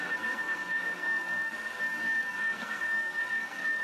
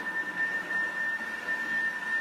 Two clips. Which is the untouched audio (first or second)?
second